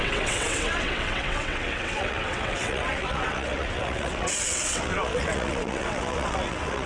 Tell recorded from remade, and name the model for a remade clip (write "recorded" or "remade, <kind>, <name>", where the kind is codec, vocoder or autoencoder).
remade, vocoder, WaveNeXt